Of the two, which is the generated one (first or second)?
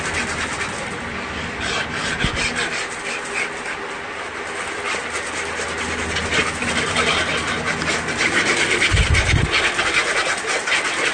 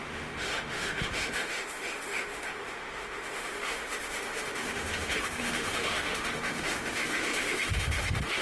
second